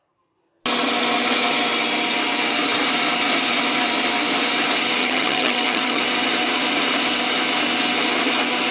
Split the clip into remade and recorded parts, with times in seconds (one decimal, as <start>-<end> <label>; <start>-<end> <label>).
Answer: 0.0-5.0 recorded; 5.0-6.0 remade; 6.0-8.7 recorded